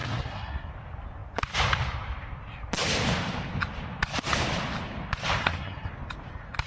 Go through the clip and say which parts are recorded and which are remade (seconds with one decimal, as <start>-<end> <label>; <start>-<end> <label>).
0.0-0.7 remade; 0.7-5.4 recorded; 5.4-5.9 remade; 5.9-6.7 recorded